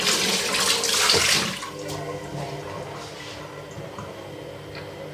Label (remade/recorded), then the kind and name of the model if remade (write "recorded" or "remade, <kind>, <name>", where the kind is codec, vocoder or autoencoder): recorded